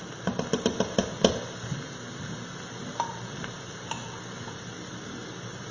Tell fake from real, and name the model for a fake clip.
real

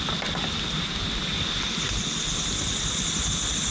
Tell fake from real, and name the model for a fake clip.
real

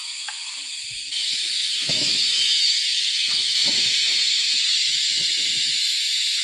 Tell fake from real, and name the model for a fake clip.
fake, autoencoder, DAC-VAE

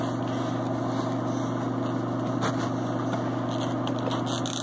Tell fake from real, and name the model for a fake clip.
real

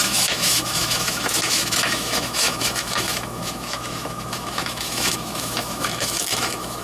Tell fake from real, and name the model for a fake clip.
fake, autoencoder, DAC-VAE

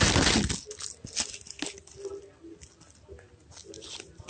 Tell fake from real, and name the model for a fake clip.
real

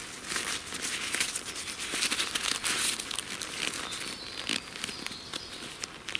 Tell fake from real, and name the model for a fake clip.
real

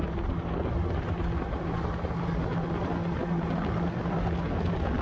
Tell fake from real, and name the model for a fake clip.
real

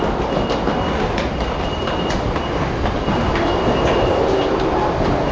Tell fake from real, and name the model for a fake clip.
real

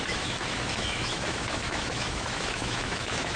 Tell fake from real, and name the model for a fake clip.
fake, autoencoder, DAC-VAE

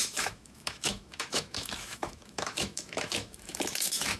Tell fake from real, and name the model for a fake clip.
fake, autoencoder, DAC-VAE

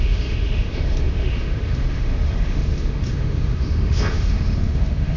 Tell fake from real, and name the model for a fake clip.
fake, autoencoder, DAC-VAE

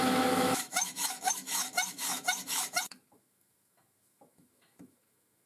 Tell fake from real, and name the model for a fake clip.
fake, autoencoder, DAC-VAE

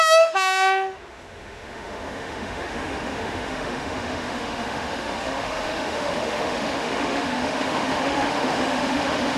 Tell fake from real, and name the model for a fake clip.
fake, autoencoder, DAC-VAE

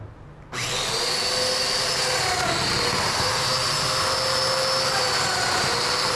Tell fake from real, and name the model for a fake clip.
real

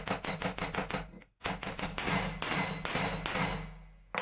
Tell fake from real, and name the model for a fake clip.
real